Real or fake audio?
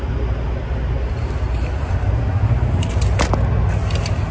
real